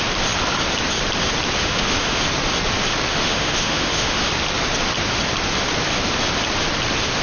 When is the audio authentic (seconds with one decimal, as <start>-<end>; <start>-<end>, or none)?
0.0-1.6; 2.2-3.1; 4.2-7.2